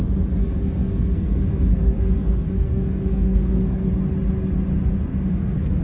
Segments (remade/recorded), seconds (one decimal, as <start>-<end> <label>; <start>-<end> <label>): 0.0-0.4 recorded; 0.4-3.9 remade; 3.9-5.1 recorded; 5.1-5.8 remade